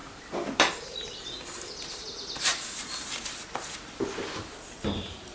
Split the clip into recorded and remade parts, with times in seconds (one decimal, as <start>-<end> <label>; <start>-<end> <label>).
0.0-2.0 remade; 2.0-2.5 recorded; 2.5-3.4 remade; 3.4-5.3 recorded